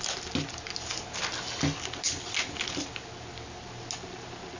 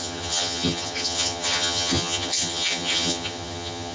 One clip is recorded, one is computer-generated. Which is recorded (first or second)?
first